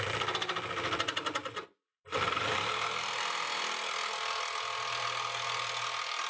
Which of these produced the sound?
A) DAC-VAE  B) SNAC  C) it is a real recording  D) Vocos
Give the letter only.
C